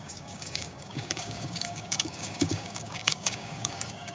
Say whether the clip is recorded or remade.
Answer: remade